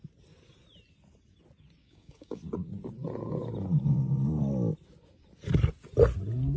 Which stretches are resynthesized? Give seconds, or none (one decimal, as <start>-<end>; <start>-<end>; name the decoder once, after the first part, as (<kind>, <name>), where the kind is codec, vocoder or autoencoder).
1.8-2.4 (codec, DAC)